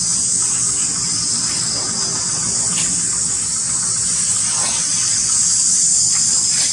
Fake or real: real